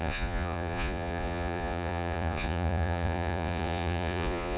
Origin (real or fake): fake